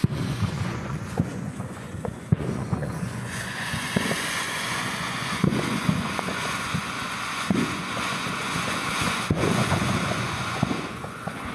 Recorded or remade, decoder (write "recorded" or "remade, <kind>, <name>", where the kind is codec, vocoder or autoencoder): remade, vocoder, Vocos